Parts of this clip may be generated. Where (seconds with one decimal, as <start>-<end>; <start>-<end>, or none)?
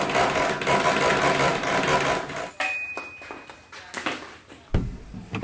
none